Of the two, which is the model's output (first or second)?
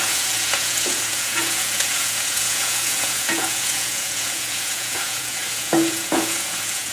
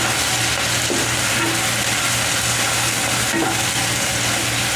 first